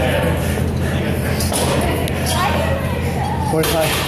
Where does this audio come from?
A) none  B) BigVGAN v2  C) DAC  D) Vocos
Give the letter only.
A